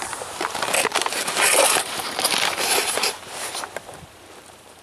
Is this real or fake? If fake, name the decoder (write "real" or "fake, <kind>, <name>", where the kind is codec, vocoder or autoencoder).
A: fake, vocoder, BigVGAN v2